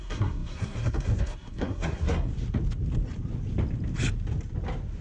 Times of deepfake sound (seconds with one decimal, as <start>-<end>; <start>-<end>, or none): 0.0-2.3